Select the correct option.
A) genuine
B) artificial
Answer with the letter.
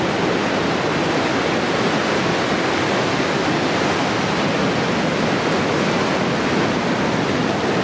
A